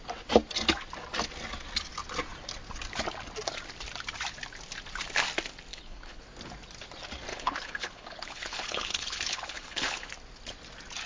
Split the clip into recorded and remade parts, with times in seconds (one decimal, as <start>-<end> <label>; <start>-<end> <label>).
0.0-5.7 recorded; 5.7-6.2 remade; 6.2-7.3 recorded; 7.3-10.1 remade; 10.1-11.1 recorded